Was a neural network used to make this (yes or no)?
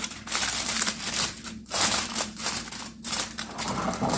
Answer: yes